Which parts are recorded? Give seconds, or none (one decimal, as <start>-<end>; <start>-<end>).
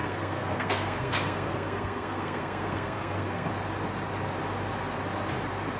3.5-5.8